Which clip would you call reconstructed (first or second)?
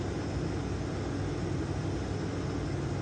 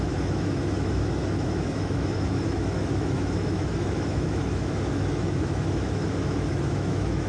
second